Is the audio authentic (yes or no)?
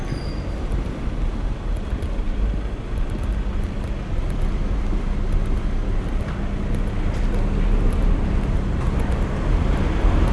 yes